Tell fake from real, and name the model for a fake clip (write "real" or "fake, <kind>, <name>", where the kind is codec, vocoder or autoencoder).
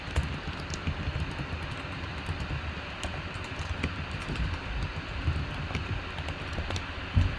real